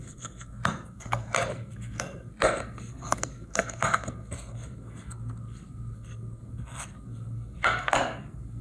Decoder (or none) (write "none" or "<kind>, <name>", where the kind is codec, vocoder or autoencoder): codec, SNAC